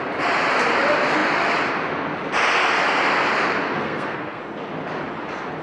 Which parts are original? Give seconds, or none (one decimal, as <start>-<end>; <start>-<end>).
0.0-3.6; 4.4-5.6